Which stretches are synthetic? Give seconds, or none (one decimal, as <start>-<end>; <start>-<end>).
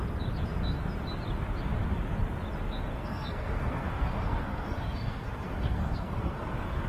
2.9-6.9